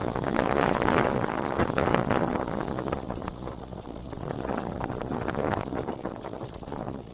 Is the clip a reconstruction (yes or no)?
yes